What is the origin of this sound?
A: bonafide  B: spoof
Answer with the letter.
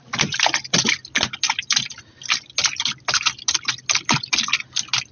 A